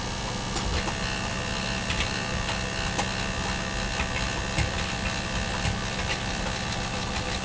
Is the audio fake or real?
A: real